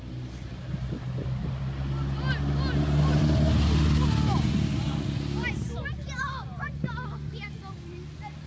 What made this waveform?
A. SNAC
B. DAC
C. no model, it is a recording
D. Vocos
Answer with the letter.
C